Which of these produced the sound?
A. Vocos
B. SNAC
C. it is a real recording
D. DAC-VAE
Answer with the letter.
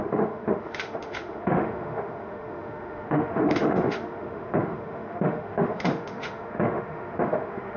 D